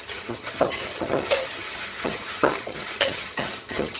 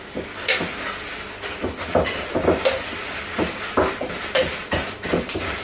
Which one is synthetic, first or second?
first